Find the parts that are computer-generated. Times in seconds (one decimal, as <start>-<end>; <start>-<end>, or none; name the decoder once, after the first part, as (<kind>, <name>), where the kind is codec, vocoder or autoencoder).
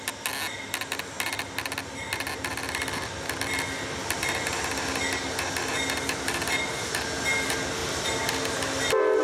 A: none